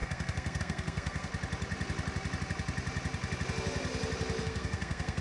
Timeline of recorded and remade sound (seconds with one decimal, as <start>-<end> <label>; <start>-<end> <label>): 0.0-1.3 remade; 1.3-4.4 recorded; 4.4-5.2 remade